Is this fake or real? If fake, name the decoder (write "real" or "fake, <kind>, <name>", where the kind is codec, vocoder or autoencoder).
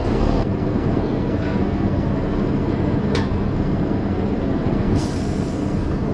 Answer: fake, codec, SNAC